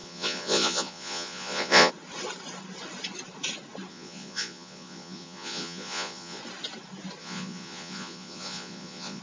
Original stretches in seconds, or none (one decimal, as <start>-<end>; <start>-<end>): 1.9-3.9; 6.4-7.2